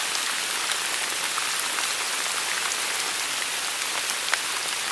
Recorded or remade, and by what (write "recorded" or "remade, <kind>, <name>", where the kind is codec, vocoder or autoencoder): recorded